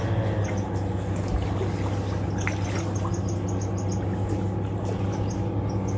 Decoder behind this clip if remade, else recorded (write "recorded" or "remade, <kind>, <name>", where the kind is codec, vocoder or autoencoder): recorded